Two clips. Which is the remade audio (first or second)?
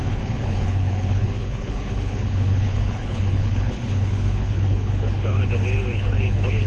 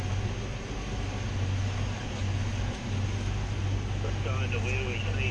first